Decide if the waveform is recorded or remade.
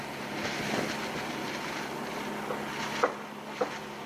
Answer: recorded